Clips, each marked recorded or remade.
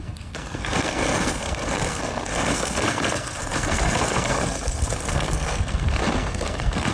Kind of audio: remade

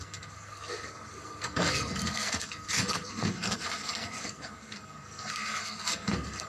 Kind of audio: remade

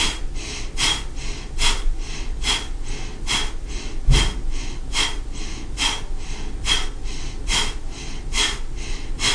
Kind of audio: recorded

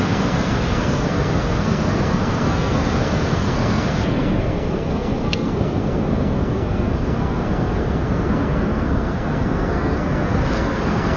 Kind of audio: remade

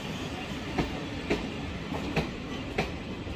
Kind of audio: recorded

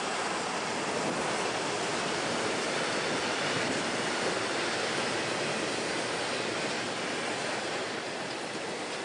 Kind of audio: recorded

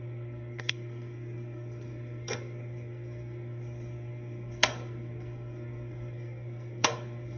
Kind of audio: remade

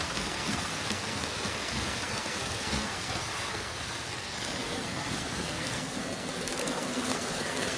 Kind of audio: remade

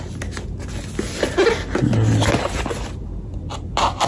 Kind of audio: recorded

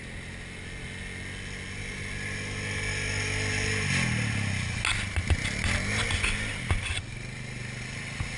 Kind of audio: recorded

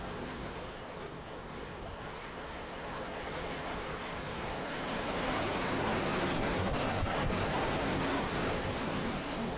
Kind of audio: remade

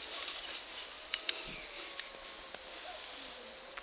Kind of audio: recorded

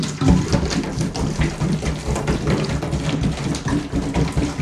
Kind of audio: recorded